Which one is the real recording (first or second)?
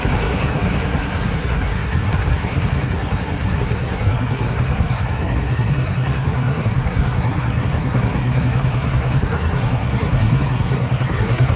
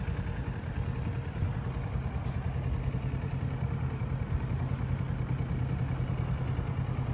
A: second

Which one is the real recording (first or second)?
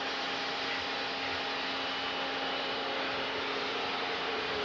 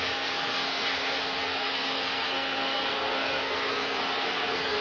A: first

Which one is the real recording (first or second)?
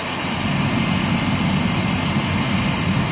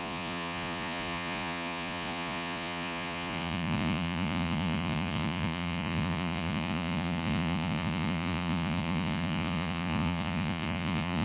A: first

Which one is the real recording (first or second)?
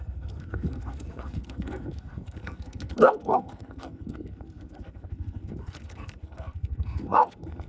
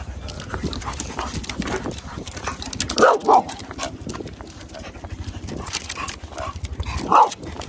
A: second